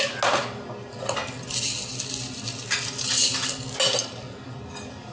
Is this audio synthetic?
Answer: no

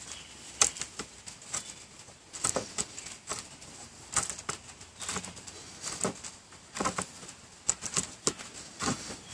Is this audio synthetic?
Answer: no